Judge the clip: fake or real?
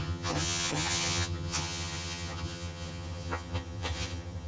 fake